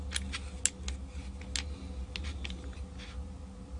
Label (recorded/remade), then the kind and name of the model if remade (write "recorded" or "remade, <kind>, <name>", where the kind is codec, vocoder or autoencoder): recorded